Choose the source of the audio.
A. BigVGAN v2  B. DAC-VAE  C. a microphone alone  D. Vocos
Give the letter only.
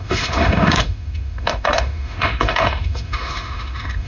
B